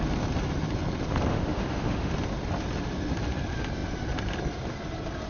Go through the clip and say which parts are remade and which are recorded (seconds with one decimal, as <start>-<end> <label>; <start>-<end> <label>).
0.0-1.3 recorded; 1.3-2.1 remade; 2.1-5.3 recorded